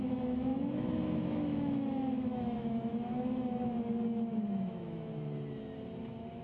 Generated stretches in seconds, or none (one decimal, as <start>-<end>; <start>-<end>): 0.0-5.1